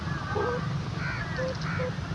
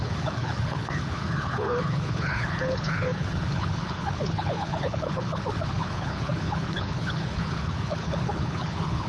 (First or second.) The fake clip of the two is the second